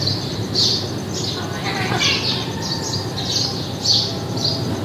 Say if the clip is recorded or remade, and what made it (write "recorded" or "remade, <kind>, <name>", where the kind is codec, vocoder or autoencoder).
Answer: recorded